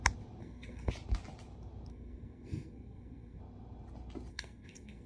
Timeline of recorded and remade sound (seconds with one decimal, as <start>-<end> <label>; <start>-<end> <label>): 0.0-0.4 recorded; 0.4-0.9 remade; 0.9-1.9 recorded; 1.9-3.4 remade; 3.4-4.3 recorded; 4.3-5.1 remade